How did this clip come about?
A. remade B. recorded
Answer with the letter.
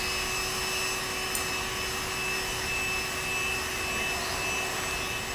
B